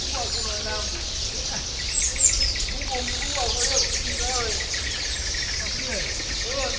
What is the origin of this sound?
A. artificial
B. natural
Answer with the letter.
B